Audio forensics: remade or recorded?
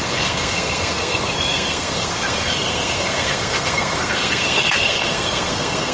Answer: remade